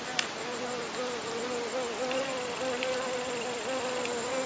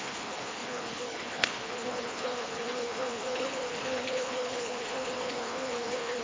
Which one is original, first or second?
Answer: first